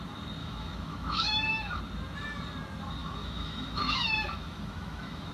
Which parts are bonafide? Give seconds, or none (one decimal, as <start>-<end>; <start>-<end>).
0.0-0.4; 1.8-3.0